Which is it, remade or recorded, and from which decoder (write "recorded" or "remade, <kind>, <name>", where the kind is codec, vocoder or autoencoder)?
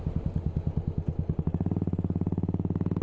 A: recorded